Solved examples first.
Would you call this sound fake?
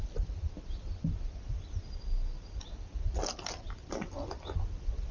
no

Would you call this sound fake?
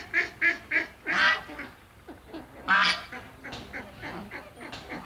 no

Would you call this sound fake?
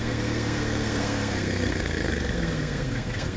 yes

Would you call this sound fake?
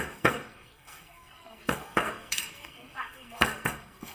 yes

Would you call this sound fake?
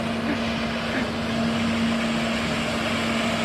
no